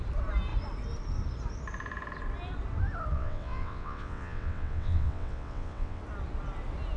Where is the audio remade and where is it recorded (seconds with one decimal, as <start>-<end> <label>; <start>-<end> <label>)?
0.0-3.1 recorded; 3.1-6.0 remade; 6.0-7.0 recorded